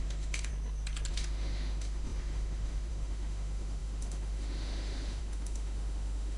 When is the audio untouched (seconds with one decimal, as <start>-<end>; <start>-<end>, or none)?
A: 0.5-1.1